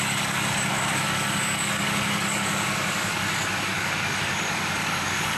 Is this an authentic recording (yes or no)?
no